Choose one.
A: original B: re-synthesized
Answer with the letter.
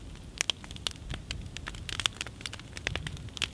A